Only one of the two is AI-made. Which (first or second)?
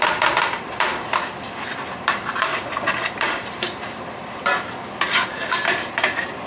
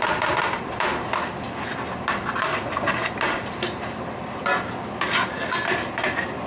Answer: first